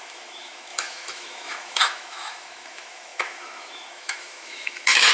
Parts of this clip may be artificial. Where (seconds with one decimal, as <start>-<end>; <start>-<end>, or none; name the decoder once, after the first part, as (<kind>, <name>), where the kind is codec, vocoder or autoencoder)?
0.0-5.1 (autoencoder, DAC-VAE)